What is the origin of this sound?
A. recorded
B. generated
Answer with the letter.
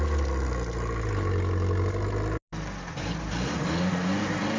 A